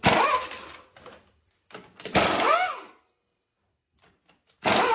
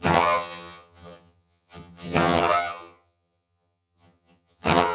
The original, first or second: first